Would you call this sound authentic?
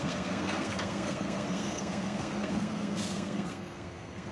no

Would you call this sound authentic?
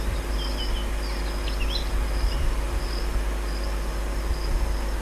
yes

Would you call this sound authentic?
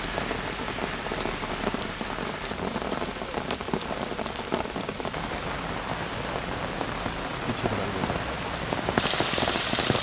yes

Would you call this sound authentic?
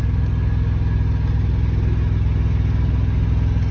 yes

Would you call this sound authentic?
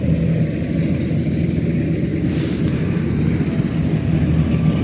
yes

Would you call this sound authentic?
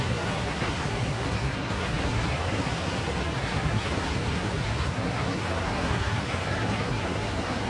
no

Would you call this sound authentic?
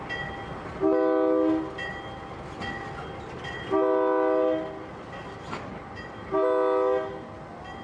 yes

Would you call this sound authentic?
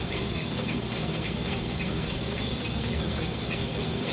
no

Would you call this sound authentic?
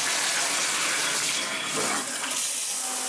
yes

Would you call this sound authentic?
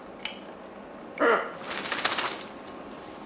yes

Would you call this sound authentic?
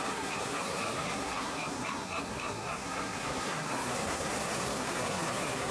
no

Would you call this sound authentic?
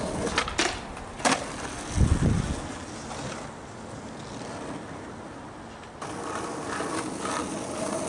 yes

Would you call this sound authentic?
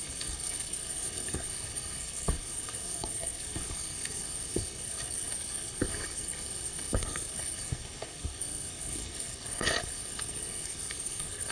no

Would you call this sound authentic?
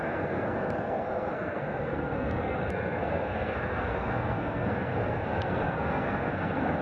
no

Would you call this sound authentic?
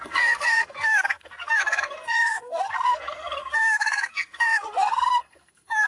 no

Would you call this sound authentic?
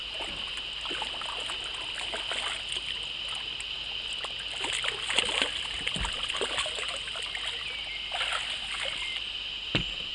yes